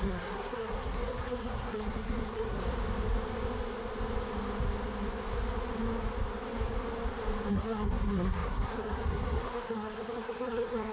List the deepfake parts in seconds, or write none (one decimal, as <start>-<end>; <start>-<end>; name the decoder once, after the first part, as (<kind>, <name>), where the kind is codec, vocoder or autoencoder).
0.0-2.6 (codec, SNAC); 7.5-10.9